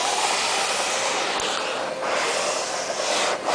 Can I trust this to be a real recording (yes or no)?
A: yes